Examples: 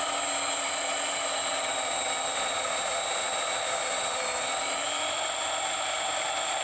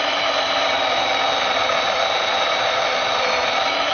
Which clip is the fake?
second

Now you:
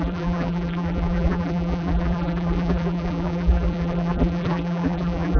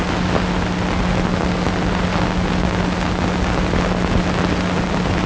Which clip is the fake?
first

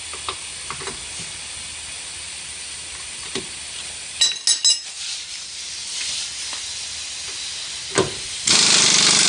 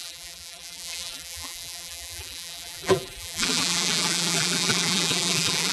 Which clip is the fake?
second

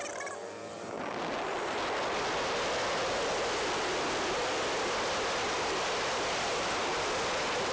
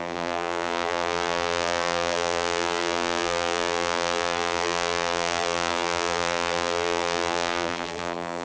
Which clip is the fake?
second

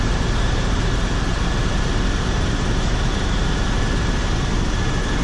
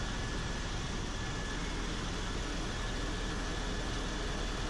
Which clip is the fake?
first